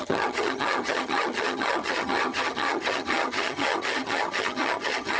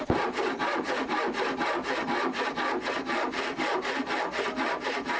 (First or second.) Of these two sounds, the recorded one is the second